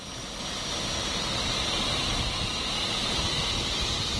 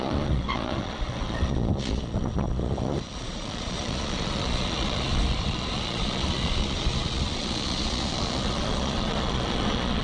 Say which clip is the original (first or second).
first